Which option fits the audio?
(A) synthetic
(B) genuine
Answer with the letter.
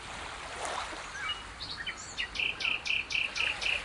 B